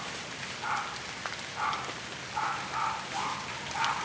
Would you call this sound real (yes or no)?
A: yes